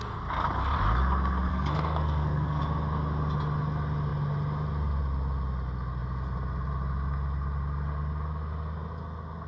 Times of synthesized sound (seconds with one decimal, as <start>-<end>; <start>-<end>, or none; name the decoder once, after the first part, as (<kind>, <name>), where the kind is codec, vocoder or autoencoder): 1.5-2.6 (codec, SNAC)